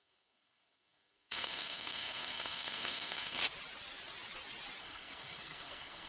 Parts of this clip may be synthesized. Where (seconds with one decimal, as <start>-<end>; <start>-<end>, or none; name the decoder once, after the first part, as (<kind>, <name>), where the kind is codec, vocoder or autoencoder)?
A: 0.0-3.4 (codec, SNAC); 4.8-6.1